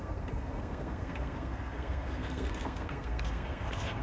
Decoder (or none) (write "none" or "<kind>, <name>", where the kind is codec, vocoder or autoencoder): codec, SNAC